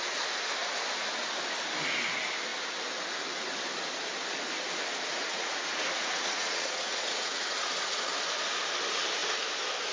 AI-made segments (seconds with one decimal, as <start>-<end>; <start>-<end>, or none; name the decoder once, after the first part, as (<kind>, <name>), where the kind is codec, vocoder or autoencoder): 5.3-8.1 (vocoder, Vocos)